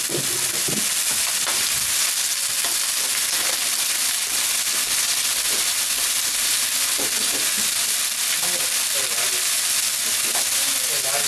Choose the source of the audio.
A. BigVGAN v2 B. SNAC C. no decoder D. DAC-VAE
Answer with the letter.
C